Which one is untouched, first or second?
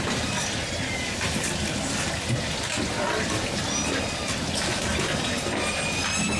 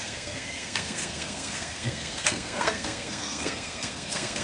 first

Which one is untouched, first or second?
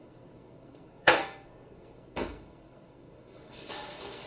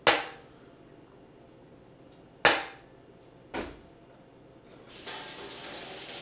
second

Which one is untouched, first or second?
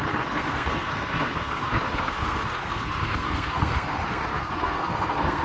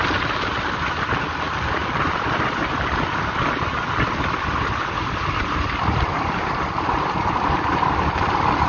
second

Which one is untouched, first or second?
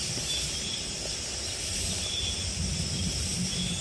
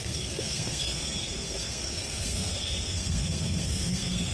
first